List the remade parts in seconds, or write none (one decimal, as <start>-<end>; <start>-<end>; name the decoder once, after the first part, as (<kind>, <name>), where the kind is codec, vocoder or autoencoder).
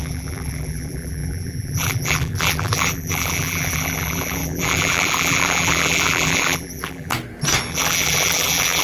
0.0-7.1 (vocoder, BigVGAN v2); 7.7-8.8